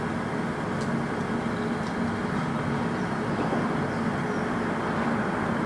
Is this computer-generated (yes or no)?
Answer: no